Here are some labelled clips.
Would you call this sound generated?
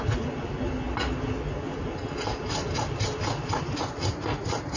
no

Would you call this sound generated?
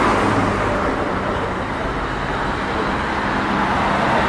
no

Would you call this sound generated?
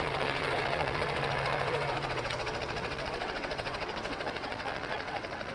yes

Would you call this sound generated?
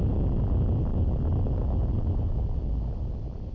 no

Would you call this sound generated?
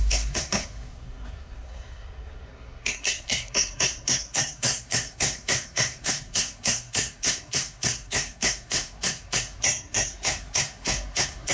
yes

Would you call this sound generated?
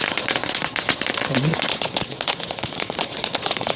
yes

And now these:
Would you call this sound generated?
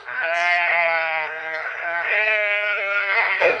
yes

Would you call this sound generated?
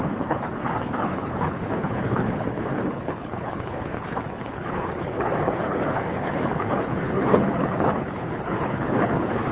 yes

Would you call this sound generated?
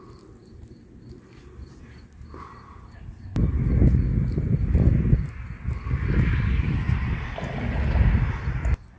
no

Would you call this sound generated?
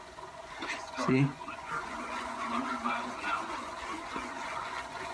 yes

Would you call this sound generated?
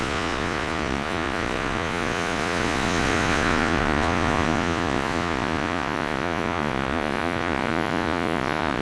yes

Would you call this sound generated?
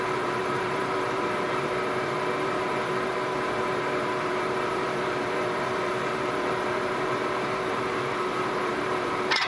yes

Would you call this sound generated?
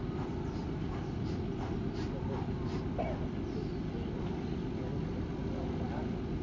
no